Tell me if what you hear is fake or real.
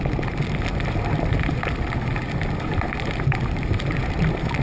real